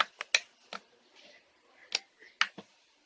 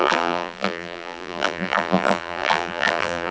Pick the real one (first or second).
first